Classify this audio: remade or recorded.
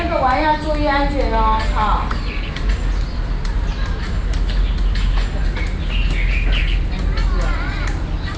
recorded